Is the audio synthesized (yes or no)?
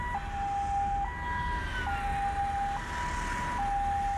no